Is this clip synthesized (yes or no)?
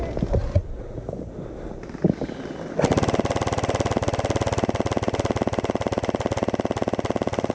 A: no